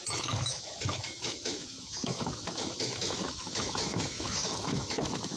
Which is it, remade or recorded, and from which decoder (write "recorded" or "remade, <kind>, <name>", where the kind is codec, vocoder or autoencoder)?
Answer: remade, autoencoder, DAC-VAE